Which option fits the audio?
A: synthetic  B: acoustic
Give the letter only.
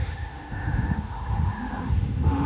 A